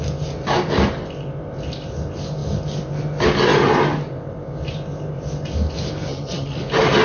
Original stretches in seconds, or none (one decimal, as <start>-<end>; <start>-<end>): 0.0-6.1; 6.6-7.0